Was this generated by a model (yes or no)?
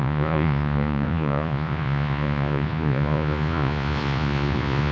yes